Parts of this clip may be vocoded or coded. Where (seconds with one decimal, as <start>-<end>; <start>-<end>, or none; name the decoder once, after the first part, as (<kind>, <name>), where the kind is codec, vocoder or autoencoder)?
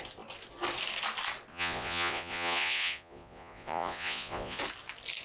1.5-4.6 (vocoder, Vocos)